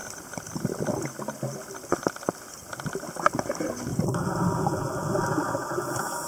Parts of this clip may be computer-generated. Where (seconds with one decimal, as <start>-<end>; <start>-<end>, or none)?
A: 0.0-1.0; 3.9-5.5